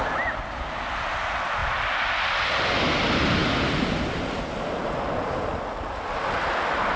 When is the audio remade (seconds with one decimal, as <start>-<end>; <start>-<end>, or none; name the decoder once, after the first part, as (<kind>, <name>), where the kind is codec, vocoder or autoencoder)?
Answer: none